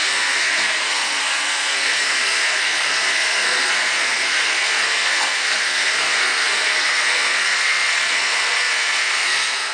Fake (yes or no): yes